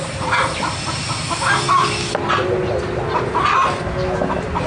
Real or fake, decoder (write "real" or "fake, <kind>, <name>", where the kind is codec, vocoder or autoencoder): real